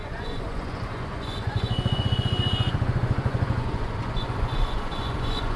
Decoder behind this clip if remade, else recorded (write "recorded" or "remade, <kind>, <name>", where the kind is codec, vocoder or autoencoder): remade, vocoder, Vocos